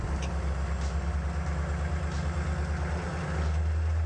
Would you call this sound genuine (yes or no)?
yes